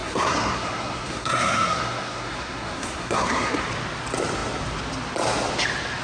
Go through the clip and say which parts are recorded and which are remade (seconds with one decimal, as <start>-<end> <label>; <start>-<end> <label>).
0.0-3.6 remade; 3.6-6.0 recorded